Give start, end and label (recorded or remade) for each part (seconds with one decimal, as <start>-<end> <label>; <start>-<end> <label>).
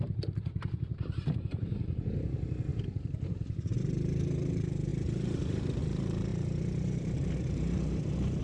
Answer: 0.0-6.3 remade; 6.3-7.0 recorded; 7.0-8.4 remade